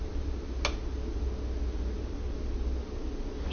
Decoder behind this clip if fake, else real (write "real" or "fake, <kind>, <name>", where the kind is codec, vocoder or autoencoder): real